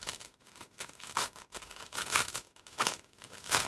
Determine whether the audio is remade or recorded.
remade